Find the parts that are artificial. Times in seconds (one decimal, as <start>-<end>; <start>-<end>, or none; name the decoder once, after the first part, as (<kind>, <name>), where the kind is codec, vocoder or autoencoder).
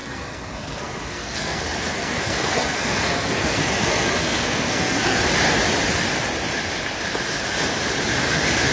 0.0-5.2 (codec, SNAC)